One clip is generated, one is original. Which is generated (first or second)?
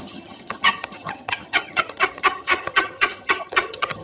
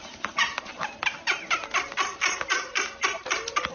first